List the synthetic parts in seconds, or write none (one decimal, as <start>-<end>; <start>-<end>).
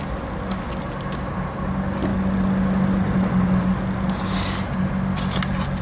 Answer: none